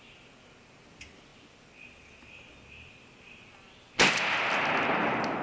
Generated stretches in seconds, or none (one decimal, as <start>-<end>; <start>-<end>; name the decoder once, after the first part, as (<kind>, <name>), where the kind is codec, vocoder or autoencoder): none